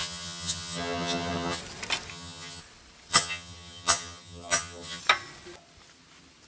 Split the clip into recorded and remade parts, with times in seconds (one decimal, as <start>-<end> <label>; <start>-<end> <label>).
0.0-1.6 remade; 1.6-2.1 recorded; 2.1-2.6 remade; 2.6-3.1 recorded; 3.1-5.0 remade; 5.0-6.5 recorded

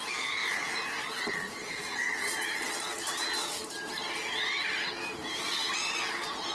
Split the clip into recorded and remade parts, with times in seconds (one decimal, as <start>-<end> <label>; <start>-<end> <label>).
0.0-5.6 recorded; 5.6-6.5 remade

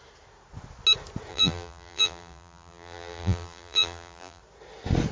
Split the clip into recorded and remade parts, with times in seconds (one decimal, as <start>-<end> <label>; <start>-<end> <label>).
0.0-1.3 recorded; 1.3-4.4 remade; 4.4-5.1 recorded

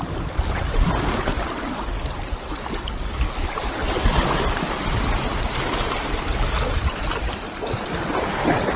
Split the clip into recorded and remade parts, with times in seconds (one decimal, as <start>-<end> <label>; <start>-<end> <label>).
0.0-8.8 recorded